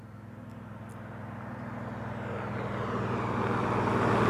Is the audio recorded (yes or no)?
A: yes